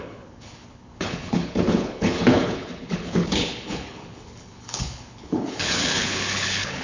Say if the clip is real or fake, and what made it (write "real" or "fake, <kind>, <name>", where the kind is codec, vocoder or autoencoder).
fake, codec, HILCodec